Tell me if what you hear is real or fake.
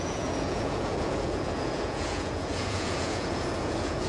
fake